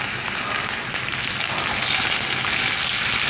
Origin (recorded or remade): recorded